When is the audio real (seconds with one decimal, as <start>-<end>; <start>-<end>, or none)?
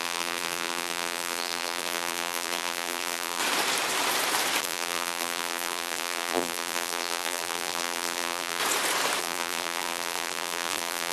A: 3.4-4.6; 8.6-9.2